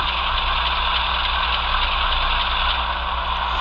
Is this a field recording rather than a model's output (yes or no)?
yes